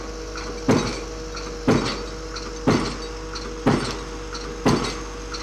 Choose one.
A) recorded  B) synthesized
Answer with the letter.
A